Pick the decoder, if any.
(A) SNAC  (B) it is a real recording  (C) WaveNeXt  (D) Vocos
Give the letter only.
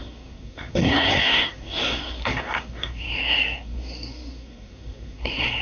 A